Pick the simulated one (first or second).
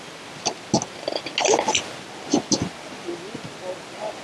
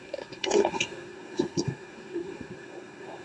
second